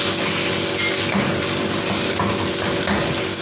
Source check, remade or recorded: recorded